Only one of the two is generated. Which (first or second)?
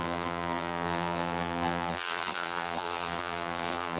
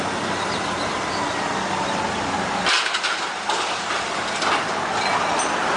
first